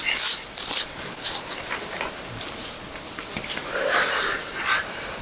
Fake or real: real